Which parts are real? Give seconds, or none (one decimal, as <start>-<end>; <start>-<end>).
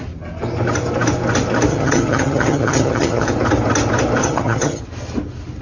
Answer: 0.0-1.7; 3.3-4.2; 4.8-5.6